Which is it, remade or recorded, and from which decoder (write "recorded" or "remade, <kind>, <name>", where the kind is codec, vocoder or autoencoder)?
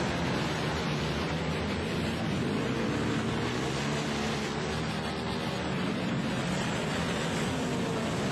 recorded